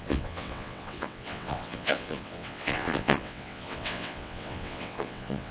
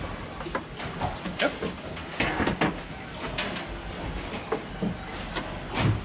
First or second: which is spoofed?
first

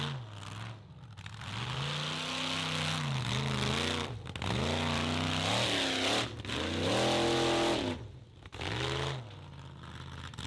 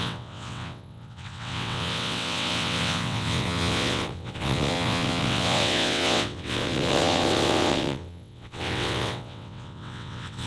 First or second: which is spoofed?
second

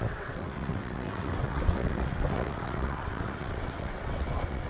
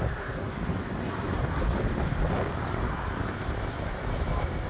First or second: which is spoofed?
first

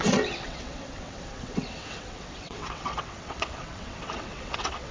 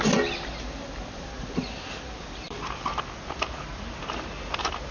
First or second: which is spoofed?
first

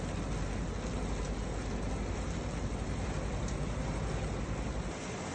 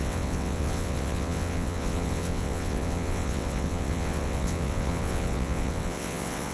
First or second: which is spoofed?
second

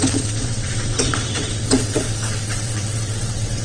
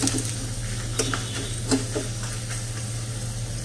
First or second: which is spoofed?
first